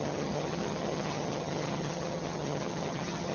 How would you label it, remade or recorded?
remade